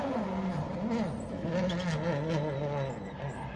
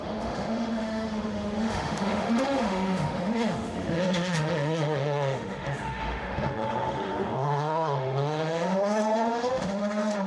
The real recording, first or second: first